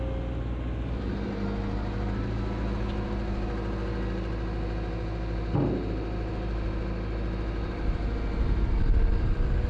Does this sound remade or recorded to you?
recorded